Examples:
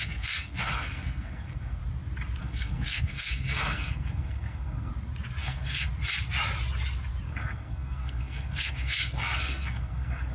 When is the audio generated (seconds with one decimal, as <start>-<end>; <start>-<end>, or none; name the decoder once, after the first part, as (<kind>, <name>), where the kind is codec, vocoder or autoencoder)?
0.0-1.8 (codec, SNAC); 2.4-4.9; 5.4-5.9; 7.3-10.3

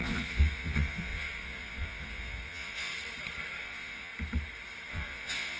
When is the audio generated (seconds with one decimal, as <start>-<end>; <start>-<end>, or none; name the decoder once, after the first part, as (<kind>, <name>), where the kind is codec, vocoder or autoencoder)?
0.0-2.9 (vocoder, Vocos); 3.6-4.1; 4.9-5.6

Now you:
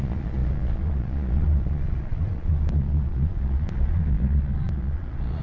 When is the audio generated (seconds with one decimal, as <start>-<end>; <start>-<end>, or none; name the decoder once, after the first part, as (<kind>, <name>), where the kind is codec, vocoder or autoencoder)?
0.0-5.4 (vocoder, Vocos)

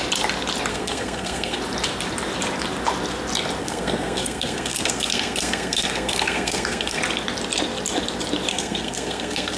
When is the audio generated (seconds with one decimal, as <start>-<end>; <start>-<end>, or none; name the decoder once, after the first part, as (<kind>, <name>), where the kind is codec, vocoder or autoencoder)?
0.7-1.6 (codec, SNAC); 3.6-7.0; 8.5-9.6

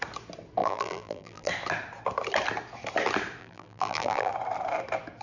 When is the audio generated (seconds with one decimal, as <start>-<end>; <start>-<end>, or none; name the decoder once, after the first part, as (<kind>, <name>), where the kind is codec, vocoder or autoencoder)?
0.6-1.5 (vocoder, BigVGAN v2); 3.4-4.3

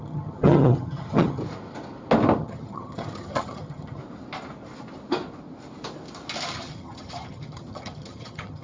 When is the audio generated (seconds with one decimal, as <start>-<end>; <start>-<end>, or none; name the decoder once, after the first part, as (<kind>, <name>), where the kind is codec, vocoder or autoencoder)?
0.0-1.4 (vocoder, HiFi-GAN); 2.4-4.0; 6.5-8.6